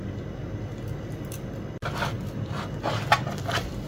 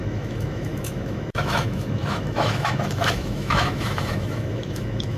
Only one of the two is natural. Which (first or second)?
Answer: first